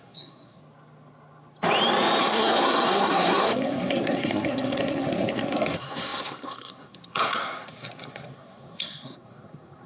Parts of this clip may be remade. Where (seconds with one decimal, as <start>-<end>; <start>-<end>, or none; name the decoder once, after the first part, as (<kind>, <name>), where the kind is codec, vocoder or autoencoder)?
0.0-0.6 (codec, SNAC); 2.2-9.9